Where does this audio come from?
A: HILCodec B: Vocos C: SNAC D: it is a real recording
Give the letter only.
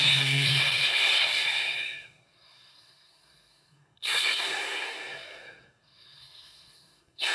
C